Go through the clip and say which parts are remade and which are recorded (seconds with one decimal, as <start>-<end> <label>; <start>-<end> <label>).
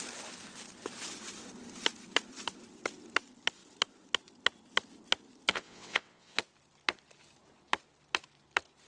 0.0-5.5 recorded; 5.5-6.4 remade; 6.4-8.9 recorded